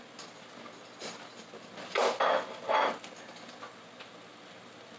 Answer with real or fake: real